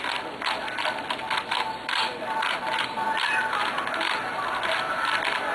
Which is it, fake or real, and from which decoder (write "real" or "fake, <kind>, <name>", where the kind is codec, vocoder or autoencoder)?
real